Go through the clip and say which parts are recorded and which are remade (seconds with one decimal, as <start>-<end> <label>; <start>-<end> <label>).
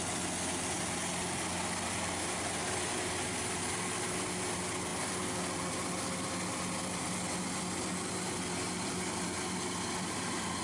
0.0-10.6 recorded